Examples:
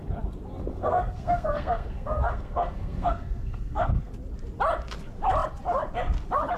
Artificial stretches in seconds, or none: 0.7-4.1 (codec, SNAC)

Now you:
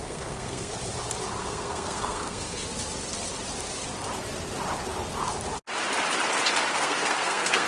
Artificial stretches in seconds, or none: 0.0-0.7 (codec, SNAC); 1.4-2.6; 6.7-7.7

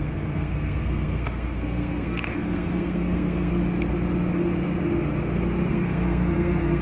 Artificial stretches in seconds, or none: 0.0-3.5 (codec, SNAC); 5.7-6.8

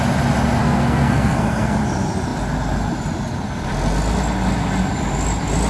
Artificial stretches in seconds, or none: 0.6-1.8 (codec, SNAC)

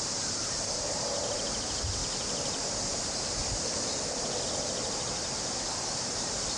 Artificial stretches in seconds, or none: none